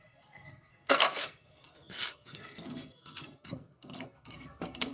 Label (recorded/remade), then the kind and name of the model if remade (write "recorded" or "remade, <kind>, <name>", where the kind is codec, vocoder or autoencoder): remade, codec, SNAC